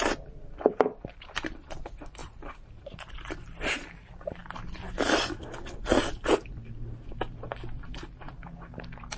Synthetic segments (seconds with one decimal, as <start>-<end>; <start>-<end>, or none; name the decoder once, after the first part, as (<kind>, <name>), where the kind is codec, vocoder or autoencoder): 2.2-3.1 (vocoder, BigVGAN v2)